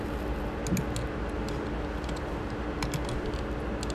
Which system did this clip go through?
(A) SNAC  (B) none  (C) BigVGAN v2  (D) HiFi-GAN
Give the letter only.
B